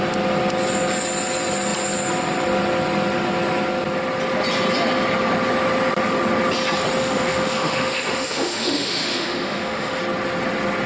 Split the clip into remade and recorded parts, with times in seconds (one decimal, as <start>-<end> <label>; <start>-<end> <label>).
0.0-7.0 recorded; 7.0-10.0 remade; 10.0-10.9 recorded